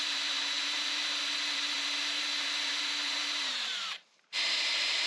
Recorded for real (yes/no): no